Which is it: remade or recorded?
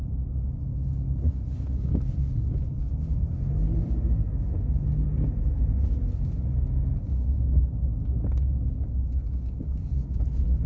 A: recorded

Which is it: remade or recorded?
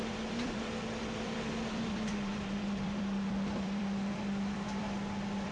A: remade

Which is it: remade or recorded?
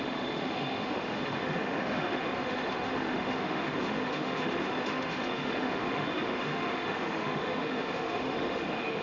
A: remade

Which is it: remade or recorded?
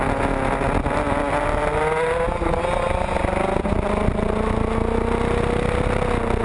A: recorded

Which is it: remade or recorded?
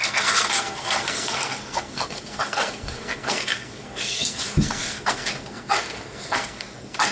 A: remade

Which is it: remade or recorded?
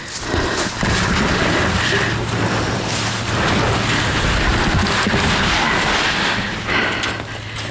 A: recorded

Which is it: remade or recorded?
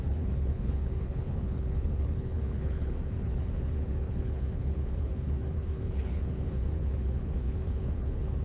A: remade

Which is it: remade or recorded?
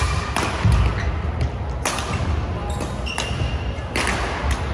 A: recorded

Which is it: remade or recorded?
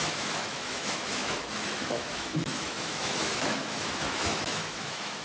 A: remade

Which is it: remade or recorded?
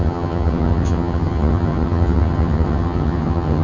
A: remade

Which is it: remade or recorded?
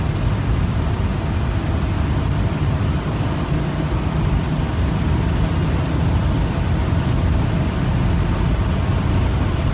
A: recorded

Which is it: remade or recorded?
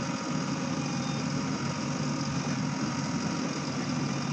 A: recorded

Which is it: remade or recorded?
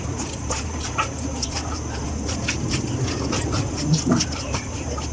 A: recorded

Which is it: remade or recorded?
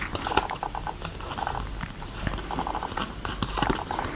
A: recorded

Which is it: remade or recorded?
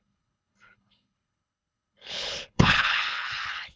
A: remade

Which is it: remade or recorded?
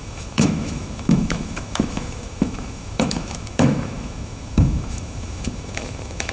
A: remade